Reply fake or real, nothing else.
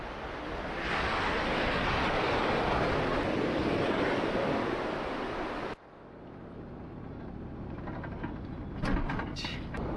real